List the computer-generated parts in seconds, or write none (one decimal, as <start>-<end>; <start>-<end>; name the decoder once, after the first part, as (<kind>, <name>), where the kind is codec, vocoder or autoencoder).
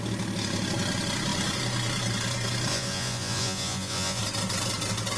2.7-4.2 (vocoder, Vocos)